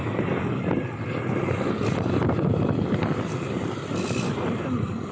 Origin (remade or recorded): recorded